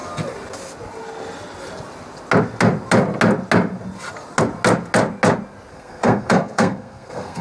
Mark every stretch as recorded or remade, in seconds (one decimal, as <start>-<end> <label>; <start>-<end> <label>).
0.0-5.7 recorded; 5.7-7.4 remade